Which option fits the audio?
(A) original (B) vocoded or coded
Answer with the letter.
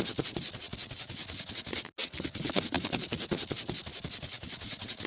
A